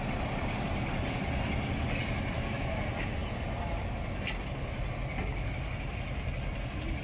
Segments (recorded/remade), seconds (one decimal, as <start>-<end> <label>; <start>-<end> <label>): 0.0-7.0 recorded